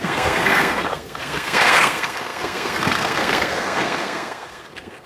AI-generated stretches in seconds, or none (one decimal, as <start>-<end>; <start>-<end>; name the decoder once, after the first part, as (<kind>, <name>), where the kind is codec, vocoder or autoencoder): 0.0-5.1 (codec, SNAC)